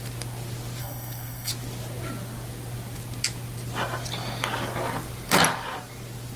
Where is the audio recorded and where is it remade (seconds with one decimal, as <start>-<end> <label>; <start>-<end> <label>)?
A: 0.0-0.8 recorded; 0.8-1.5 remade; 1.5-6.4 recorded